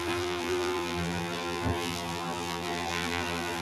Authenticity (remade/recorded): remade